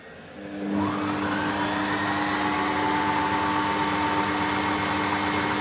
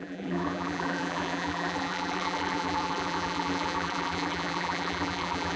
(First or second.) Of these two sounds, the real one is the first